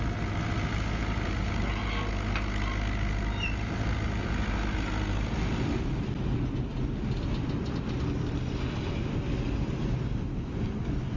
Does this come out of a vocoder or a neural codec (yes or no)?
no